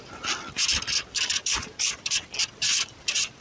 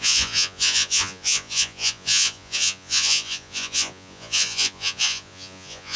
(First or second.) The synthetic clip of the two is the second